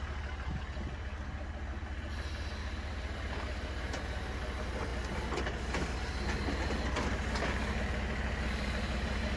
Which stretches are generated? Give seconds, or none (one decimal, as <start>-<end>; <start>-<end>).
none